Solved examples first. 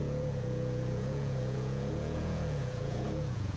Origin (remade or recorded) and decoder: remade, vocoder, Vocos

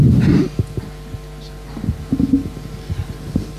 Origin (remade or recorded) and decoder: recorded